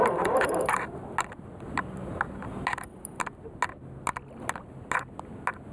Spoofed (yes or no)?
no